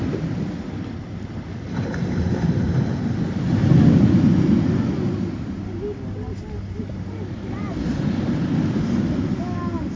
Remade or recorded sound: recorded